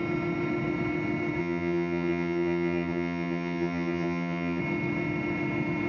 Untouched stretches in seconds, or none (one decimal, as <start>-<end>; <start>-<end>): 0.0-1.4; 4.6-5.9